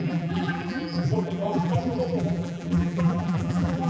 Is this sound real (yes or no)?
no